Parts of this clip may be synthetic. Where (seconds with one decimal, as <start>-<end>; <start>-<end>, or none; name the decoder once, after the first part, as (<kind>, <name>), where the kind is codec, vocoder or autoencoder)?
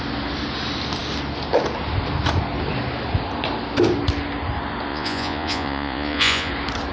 4.9-6.5 (vocoder, Vocos)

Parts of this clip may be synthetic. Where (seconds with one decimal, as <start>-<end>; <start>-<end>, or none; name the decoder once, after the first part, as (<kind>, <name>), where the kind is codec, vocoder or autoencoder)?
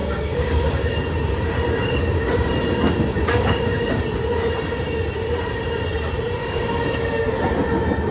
0.0-0.9 (codec, DAC); 1.8-2.5; 3.1-4.0; 6.4-7.3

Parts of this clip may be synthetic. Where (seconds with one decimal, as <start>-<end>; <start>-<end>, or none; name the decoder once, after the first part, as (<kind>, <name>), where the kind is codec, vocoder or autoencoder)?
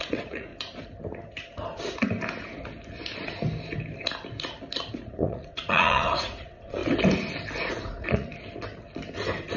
0.0-0.5 (vocoder, Vocos); 4.9-6.8; 7.7-8.3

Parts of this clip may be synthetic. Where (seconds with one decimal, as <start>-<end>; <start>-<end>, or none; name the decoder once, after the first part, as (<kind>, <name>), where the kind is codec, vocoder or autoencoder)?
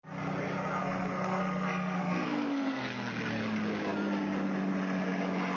0.8-3.1 (codec, SNAC)